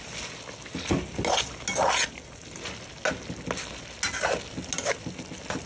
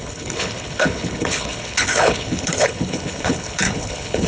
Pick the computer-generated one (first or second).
second